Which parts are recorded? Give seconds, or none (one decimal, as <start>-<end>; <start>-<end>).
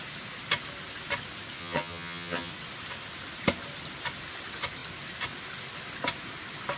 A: 0.0-1.6; 2.5-6.8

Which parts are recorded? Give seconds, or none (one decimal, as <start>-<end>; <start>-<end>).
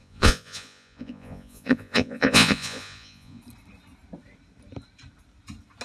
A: 3.4-5.8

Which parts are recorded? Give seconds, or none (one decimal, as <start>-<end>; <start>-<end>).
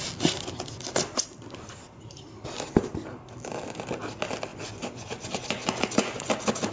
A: 0.0-4.5; 6.3-6.7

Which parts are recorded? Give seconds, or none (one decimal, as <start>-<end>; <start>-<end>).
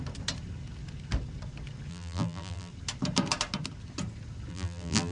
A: 0.0-1.9; 2.7-4.5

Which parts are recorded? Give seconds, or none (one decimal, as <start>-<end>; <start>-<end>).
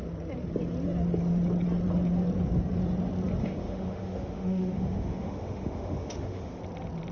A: 0.0-3.4; 6.6-7.1